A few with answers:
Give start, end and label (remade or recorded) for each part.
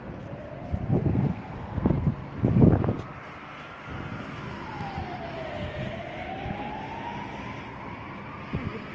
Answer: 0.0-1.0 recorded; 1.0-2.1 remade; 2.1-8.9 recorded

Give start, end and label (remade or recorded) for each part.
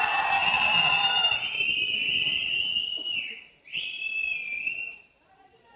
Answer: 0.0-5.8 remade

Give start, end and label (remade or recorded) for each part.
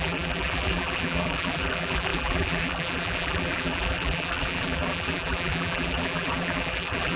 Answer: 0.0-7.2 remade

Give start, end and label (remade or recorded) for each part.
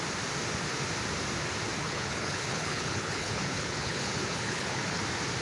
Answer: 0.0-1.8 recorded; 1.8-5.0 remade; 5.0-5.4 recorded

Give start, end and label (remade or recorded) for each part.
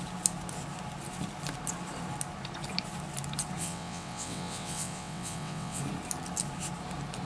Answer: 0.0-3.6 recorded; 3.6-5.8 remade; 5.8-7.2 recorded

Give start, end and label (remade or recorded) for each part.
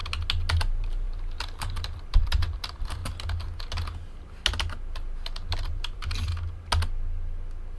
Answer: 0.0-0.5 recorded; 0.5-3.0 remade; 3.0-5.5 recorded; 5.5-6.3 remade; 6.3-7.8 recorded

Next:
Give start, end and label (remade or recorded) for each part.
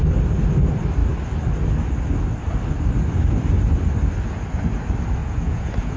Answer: 0.0-5.2 recorded; 5.2-6.0 remade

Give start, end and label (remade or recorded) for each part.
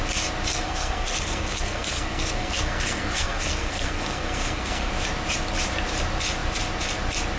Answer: 0.0-0.5 recorded; 0.5-4.9 remade; 4.9-7.4 recorded